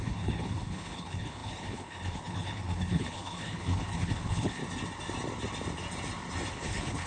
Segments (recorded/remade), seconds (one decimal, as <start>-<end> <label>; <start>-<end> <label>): 0.0-4.6 remade; 4.6-6.5 recorded; 6.5-7.1 remade